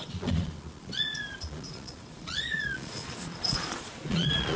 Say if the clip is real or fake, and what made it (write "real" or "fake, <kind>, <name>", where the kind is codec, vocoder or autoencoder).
fake, vocoder, Vocos